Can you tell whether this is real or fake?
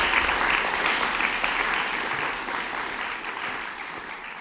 real